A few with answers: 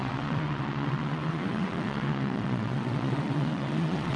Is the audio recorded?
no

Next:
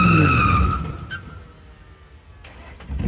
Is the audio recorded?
yes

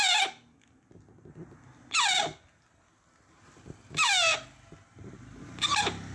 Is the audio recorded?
yes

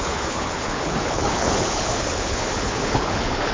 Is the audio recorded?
no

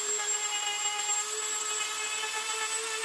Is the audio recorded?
yes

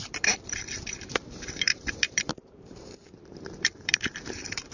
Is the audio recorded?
no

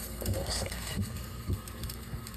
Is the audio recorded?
no